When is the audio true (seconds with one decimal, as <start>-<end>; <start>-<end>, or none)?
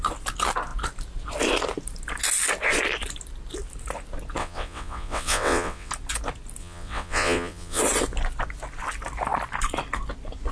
0.0-4.4; 5.9-6.6; 7.8-10.5